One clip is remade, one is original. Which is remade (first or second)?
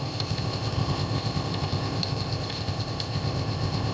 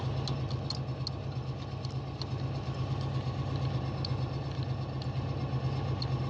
first